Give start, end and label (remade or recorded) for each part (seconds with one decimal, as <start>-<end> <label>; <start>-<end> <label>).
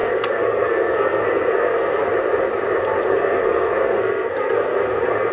0.0-2.1 remade; 2.1-3.1 recorded; 3.1-5.3 remade